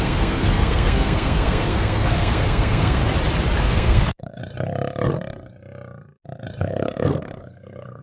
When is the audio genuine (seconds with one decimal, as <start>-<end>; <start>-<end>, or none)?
3.0-3.6; 4.4-6.6